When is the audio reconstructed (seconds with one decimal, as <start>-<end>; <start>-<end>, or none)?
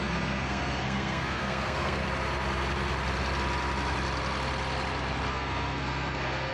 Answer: 0.0-2.0; 5.3-6.5